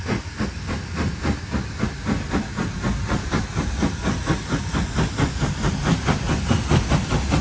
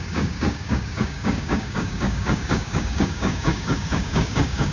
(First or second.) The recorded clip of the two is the first